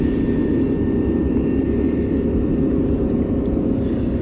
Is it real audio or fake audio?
real